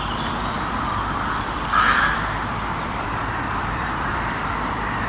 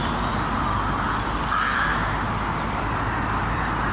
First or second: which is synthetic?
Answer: first